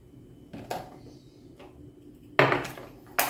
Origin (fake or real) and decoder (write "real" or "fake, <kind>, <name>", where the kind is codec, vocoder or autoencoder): real